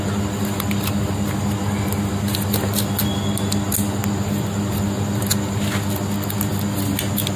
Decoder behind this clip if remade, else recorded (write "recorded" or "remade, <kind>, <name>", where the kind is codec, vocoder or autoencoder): recorded